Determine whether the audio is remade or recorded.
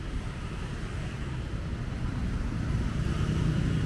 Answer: remade